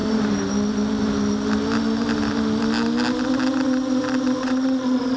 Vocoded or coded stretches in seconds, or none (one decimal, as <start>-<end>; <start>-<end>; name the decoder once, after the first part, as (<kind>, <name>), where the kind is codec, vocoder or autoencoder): 4.4-5.2 (vocoder, Vocos)